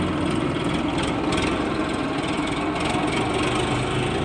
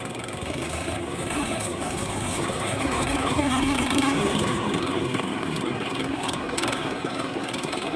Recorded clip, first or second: first